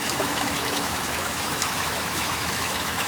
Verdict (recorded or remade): remade